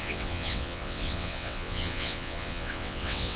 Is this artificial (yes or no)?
yes